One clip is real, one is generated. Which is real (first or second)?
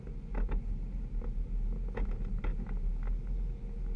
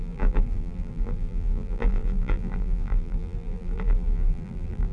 first